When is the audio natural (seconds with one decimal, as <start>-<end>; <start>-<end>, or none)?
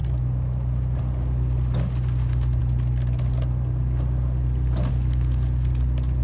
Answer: 0.0-6.2